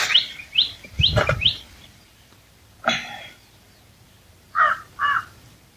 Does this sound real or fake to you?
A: fake